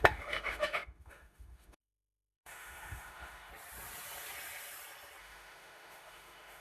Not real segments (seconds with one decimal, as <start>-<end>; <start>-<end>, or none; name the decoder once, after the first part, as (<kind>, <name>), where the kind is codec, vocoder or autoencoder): 0.0-3.5 (autoencoder, DAC-VAE); 5.2-6.6